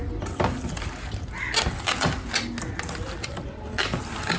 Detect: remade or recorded recorded